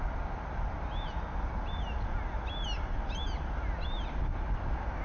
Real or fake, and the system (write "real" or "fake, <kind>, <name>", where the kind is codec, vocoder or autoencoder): real